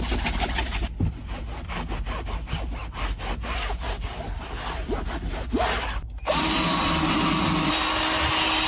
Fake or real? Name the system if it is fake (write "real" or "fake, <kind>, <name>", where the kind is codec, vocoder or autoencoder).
real